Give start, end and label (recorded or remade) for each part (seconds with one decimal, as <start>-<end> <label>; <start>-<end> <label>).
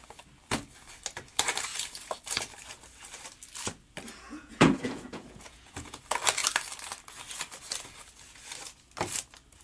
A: 0.0-4.3 recorded; 4.3-6.0 remade; 6.0-9.6 recorded